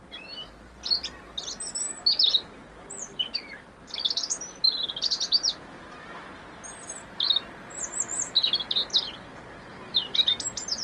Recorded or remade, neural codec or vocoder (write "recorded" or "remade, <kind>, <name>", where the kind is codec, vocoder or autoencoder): recorded